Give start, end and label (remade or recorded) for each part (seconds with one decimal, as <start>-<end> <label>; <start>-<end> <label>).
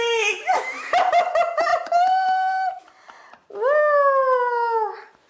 0.0-5.3 recorded